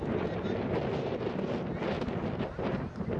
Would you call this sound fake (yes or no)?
no